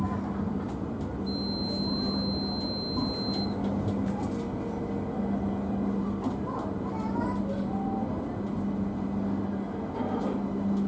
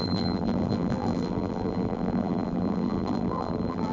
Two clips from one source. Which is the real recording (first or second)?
first